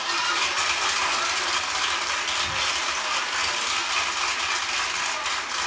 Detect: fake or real real